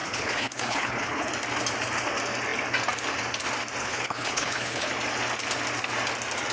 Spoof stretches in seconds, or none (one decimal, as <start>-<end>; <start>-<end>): 0.0-1.3; 3.8-4.9